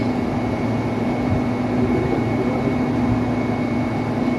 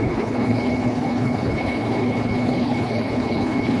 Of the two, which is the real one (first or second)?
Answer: first